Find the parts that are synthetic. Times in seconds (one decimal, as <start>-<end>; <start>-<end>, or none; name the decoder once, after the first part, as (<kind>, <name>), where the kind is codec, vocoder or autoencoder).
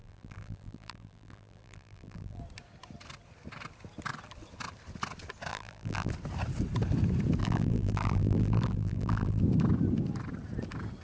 0.0-2.4 (vocoder, BigVGAN v2); 5.5-6.1; 7.4-9.4